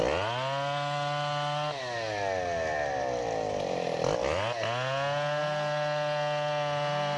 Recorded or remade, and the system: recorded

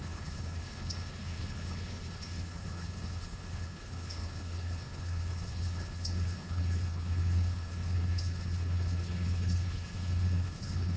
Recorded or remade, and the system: remade, codec, HILCodec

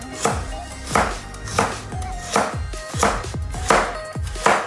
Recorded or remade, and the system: recorded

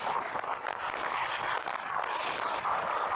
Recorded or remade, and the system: recorded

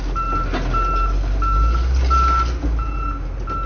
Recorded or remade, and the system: recorded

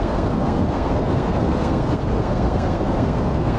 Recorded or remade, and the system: remade, codec, SNAC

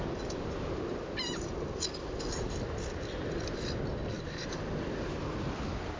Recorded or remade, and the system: recorded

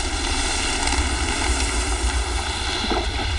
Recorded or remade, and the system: recorded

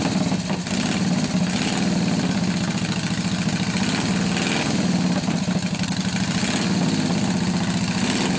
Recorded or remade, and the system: recorded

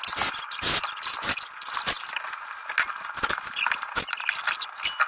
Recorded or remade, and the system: recorded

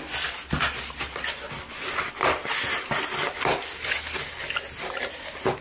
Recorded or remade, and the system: recorded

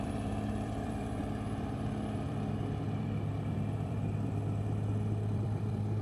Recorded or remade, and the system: remade, vocoder, BigVGAN v2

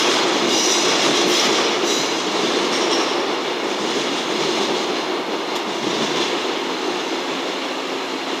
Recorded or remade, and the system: recorded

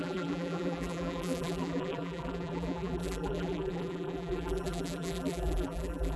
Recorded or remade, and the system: remade, vocoder, BigVGAN v2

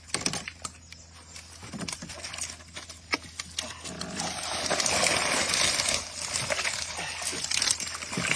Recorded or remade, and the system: recorded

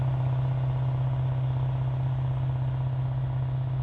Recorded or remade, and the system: recorded